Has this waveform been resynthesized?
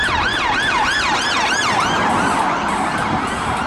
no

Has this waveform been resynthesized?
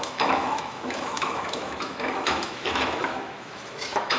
yes